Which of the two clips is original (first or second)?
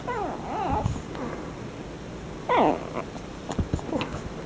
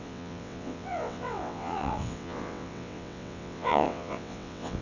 first